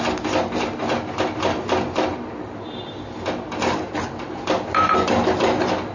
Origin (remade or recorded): recorded